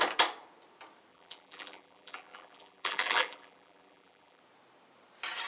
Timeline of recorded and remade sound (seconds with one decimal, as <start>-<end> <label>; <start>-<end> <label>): 0.0-1.1 recorded; 1.1-4.4 remade; 4.4-5.5 recorded